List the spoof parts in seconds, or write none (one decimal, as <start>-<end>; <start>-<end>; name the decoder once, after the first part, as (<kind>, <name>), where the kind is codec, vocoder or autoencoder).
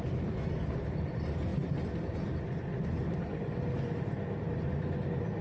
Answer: none